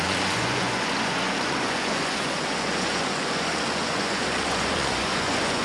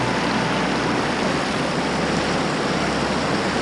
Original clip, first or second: second